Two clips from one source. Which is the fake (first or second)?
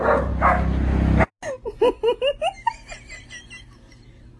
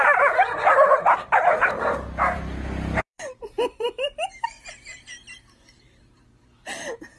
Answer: second